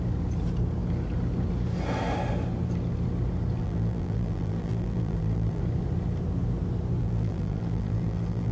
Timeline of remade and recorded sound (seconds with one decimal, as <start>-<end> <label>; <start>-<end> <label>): 0.0-3.6 recorded; 3.6-5.6 remade; 5.6-7.0 recorded; 7.0-8.5 remade